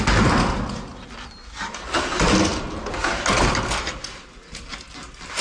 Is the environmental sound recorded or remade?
recorded